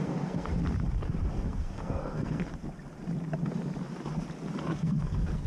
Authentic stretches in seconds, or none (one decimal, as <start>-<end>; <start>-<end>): 0.5-1.3; 2.5-4.6

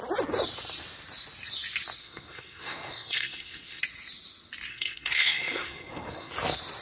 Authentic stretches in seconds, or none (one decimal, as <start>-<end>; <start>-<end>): 0.0-2.0; 3.8-4.7; 6.3-6.8

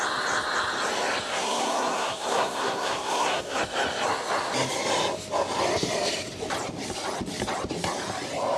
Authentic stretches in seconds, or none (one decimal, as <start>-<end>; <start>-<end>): 0.0-1.3; 3.6-8.6

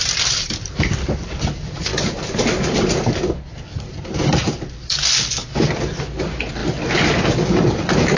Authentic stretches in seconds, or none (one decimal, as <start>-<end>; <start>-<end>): 0.0-8.2

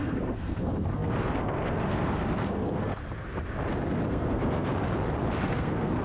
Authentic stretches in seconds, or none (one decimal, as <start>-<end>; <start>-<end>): 2.9-4.1; 4.7-5.4

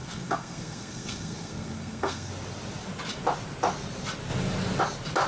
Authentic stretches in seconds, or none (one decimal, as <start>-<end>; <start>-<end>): 2.3-5.3

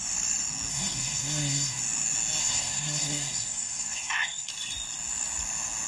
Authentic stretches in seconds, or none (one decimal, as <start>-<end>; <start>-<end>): 0.0-0.7; 1.8-2.4; 4.5-5.9